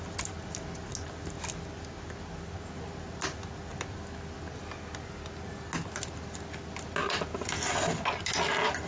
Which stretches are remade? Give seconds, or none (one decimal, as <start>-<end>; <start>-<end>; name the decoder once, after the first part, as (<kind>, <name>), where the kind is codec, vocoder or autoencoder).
none